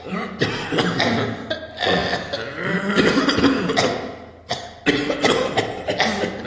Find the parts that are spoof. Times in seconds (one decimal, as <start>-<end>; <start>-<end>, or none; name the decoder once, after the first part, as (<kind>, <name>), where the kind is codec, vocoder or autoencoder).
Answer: none